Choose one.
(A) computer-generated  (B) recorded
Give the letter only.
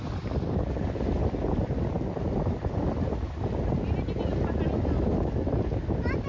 B